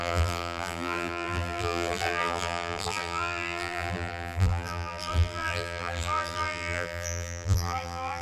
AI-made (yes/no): yes